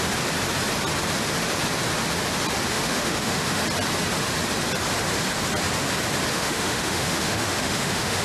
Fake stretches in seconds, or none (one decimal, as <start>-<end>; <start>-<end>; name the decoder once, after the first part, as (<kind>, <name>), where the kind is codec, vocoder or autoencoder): 2.7-3.6 (autoencoder, DAC-VAE); 6.3-8.2